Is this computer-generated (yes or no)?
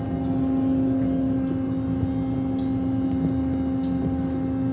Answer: no